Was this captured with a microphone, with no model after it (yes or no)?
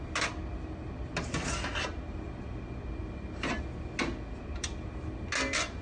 yes